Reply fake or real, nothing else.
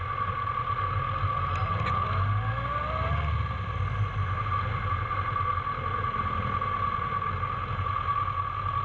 real